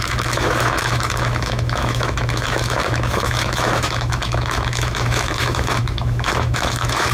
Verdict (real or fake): fake